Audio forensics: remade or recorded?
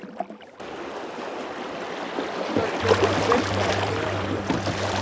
recorded